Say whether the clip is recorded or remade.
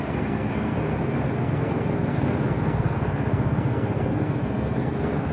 remade